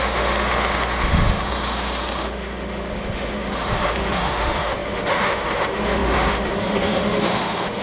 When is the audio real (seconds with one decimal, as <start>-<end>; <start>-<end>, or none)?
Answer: none